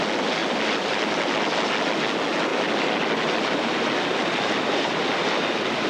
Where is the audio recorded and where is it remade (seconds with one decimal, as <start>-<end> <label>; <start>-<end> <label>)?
0.0-0.4 recorded; 0.4-1.1 remade; 1.1-2.5 recorded; 2.5-5.9 remade